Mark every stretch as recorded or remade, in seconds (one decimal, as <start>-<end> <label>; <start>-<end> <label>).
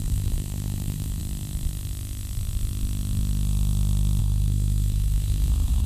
0.0-1.2 remade; 1.2-4.2 recorded; 4.2-5.9 remade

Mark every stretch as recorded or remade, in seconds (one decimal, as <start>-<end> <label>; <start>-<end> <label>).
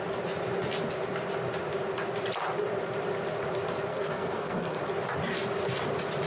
0.0-3.9 recorded; 3.9-4.8 remade; 4.8-6.3 recorded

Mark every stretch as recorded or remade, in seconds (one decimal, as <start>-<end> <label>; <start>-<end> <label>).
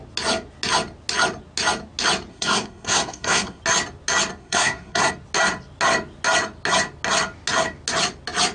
0.0-2.3 recorded; 2.3-3.6 remade; 3.6-4.4 recorded; 4.4-5.1 remade; 5.1-8.5 recorded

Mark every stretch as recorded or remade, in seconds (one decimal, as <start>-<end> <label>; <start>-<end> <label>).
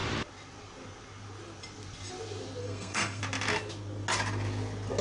0.0-2.6 recorded; 2.6-3.2 remade; 3.2-5.0 recorded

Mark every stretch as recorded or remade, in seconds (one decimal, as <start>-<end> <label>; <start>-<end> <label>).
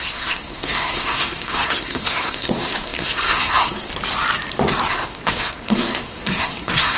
0.0-3.9 remade; 3.9-4.9 recorded; 4.9-7.0 remade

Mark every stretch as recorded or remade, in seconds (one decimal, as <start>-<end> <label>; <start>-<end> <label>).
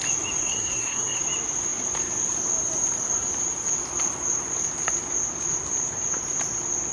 0.0-0.4 recorded; 0.4-1.2 remade; 1.2-6.9 recorded